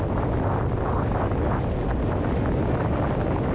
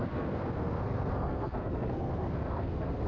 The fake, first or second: second